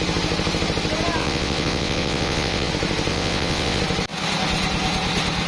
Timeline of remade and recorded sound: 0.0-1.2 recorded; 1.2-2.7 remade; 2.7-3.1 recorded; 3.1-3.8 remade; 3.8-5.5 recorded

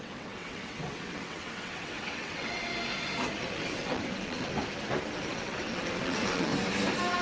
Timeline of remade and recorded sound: 0.0-2.7 remade; 2.7-3.4 recorded; 3.4-4.5 remade; 4.5-5.3 recorded; 5.3-6.5 remade; 6.5-7.2 recorded

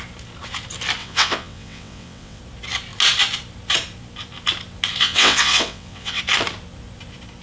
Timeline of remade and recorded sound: 0.0-1.0 recorded; 1.0-2.4 remade; 2.4-5.0 recorded; 5.0-6.2 remade; 6.2-7.4 recorded

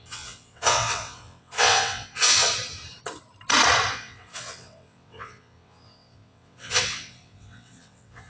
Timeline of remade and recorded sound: 0.0-2.5 remade; 2.5-3.9 recorded; 3.9-8.3 remade

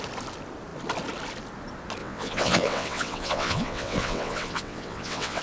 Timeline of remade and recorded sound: 0.0-2.0 recorded; 2.0-5.4 remade

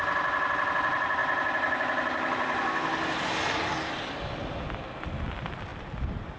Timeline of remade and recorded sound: 0.0-6.4 recorded